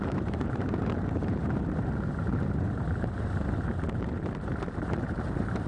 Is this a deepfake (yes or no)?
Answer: yes